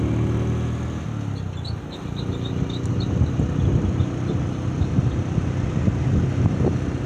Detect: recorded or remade recorded